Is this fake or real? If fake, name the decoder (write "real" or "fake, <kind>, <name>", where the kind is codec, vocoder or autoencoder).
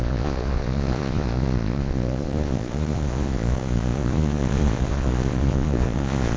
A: fake, vocoder, Vocos